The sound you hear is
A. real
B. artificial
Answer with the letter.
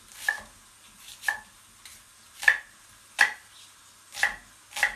A